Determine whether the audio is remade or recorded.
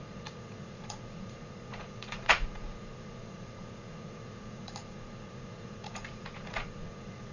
remade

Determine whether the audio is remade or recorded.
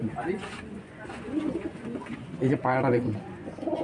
remade